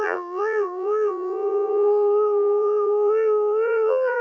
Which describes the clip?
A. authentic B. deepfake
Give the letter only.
B